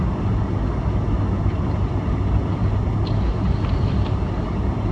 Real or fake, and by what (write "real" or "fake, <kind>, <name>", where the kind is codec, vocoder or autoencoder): real